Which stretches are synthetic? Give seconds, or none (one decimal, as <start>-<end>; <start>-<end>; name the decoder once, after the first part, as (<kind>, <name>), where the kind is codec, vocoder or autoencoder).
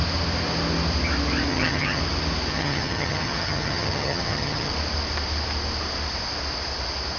1.5-2.0 (vocoder, HiFi-GAN); 2.5-4.7